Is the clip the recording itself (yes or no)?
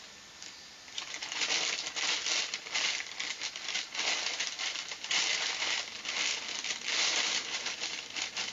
yes